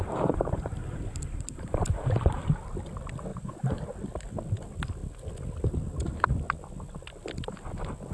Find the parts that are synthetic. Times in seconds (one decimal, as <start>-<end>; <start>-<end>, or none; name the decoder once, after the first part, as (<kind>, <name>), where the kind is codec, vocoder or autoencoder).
0.0-2.4 (vocoder, BigVGAN v2); 3.3-3.8

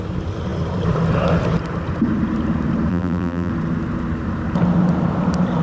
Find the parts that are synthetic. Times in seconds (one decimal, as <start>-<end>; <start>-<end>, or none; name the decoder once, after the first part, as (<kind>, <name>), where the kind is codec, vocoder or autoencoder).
2.9-3.5 (vocoder, BigVGAN v2)

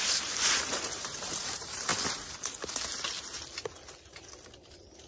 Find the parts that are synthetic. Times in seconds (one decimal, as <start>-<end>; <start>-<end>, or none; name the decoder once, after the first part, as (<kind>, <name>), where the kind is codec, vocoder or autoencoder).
0.0-1.9 (vocoder, BigVGAN v2)

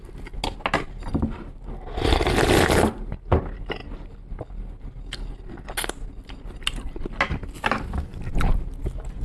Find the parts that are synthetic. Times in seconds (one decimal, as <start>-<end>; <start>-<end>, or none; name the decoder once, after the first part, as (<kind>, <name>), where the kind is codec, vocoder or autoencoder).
none

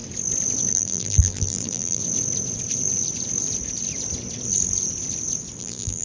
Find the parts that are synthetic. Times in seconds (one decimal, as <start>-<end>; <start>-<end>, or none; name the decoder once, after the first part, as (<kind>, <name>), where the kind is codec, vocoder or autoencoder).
0.7-2.0 (vocoder, BigVGAN v2); 5.6-6.0